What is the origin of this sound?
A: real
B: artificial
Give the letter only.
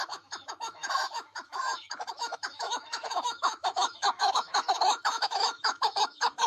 B